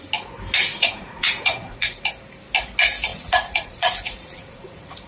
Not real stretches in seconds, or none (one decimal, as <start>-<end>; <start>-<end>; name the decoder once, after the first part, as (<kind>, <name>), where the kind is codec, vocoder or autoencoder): 0.7-2.1 (vocoder, Vocos); 3.1-5.1